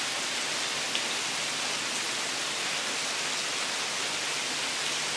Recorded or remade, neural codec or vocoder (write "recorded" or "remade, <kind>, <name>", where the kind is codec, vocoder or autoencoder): recorded